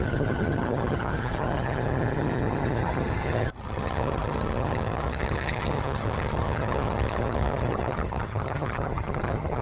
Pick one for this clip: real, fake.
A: fake